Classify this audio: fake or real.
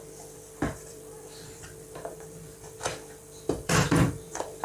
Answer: fake